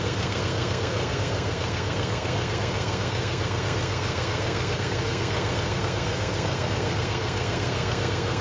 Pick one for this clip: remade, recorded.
remade